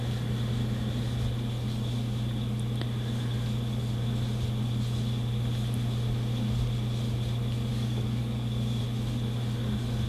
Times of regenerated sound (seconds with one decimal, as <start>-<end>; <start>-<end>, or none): 7.7-8.8